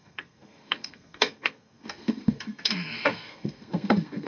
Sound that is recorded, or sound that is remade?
remade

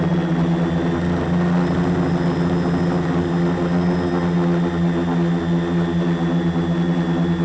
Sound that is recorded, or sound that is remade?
recorded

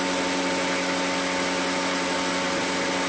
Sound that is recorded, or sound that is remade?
recorded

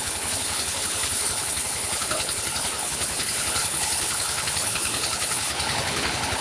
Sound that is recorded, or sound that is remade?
remade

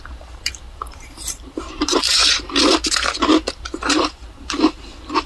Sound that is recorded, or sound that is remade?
remade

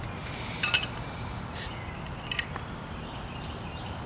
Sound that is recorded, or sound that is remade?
recorded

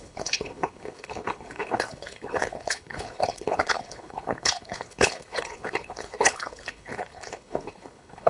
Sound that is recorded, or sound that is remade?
remade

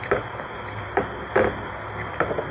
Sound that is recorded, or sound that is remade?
recorded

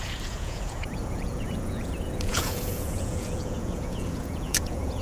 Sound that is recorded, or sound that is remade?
remade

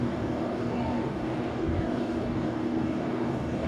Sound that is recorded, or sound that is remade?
remade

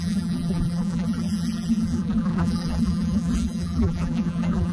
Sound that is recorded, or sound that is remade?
remade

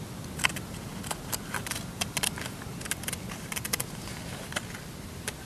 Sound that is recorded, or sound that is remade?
recorded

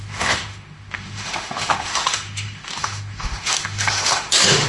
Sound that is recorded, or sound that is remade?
remade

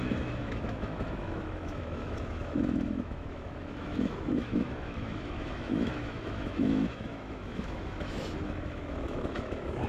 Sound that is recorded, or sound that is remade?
remade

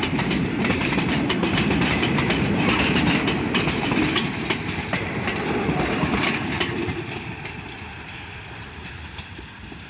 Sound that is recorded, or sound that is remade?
remade